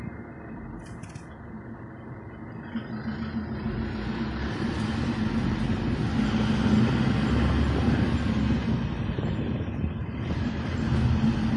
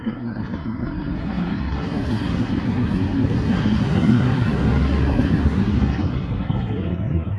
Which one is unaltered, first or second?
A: first